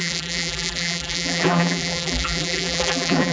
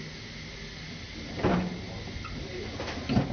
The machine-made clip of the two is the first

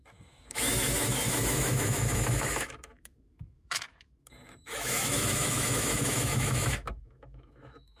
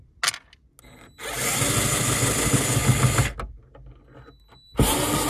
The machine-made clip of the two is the first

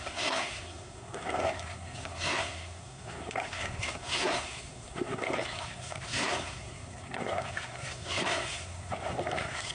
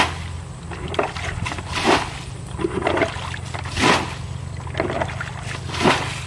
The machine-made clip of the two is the first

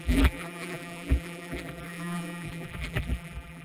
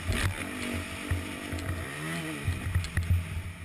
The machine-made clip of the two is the first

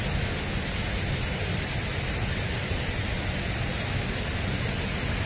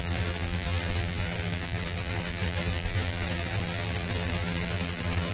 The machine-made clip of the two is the second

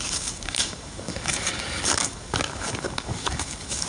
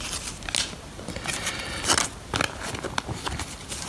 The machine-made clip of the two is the first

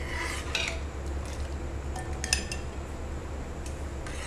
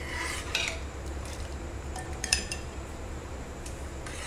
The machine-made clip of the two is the second